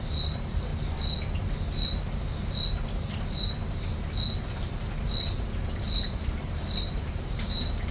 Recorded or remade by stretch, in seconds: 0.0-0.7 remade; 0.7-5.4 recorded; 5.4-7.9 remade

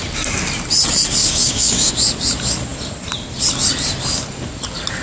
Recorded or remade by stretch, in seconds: 0.0-1.2 recorded; 1.2-1.9 remade; 1.9-5.0 recorded